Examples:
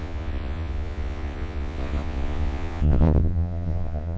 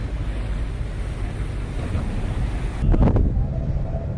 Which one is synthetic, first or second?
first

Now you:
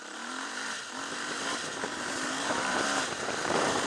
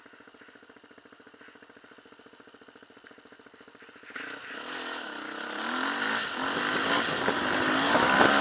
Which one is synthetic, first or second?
first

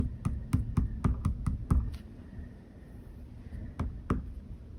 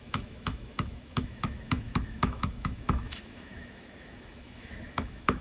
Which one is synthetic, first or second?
second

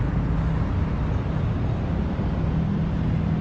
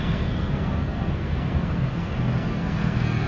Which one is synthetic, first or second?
second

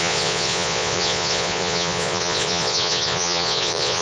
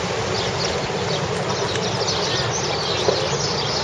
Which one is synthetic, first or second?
first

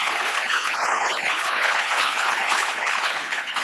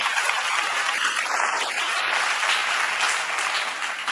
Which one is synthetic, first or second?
first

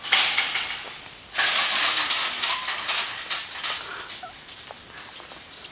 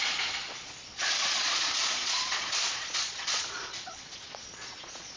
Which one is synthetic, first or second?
second